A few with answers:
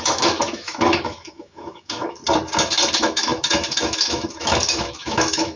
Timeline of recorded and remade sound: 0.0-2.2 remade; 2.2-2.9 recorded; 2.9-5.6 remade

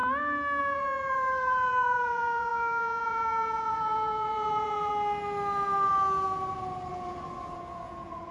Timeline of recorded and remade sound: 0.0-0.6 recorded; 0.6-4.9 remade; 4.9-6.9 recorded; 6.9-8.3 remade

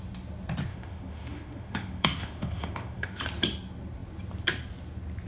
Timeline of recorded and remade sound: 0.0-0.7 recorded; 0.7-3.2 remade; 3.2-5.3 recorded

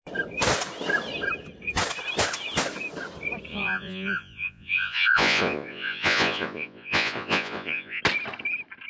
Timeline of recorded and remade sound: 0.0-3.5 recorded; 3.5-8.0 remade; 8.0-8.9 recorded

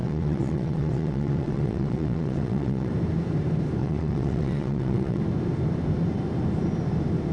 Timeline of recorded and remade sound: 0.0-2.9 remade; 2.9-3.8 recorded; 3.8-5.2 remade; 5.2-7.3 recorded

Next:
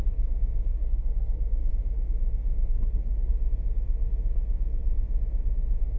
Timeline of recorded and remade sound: 0.0-0.7 recorded; 0.7-1.7 remade; 1.7-2.7 recorded; 2.7-3.3 remade; 3.3-6.0 recorded